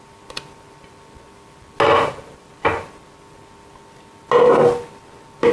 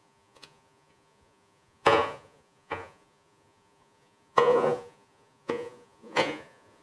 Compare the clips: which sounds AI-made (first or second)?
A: second